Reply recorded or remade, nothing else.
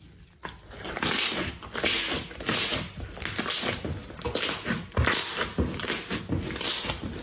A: recorded